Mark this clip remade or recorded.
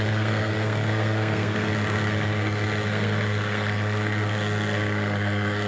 remade